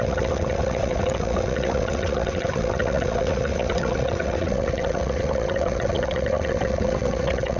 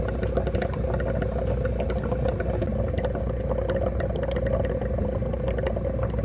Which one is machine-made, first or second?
first